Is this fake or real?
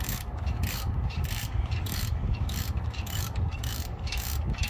fake